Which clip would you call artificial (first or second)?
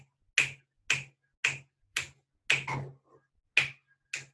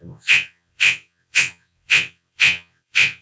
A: second